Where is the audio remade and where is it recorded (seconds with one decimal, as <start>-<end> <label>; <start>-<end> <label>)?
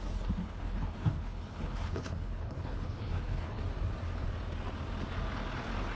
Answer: 0.0-0.4 recorded; 0.4-3.6 remade; 3.6-6.0 recorded